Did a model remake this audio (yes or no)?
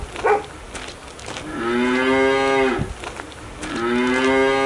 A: no